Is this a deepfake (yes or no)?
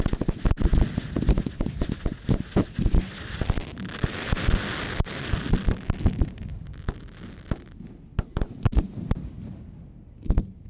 no